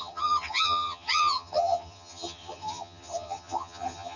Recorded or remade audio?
remade